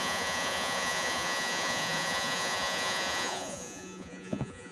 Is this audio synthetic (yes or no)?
yes